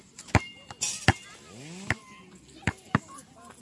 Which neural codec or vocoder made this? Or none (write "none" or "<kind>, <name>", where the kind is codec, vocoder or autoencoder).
none